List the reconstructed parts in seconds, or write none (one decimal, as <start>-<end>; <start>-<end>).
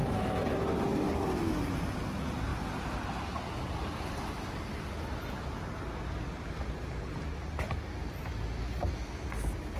none